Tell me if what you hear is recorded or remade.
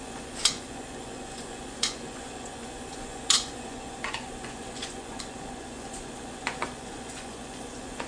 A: remade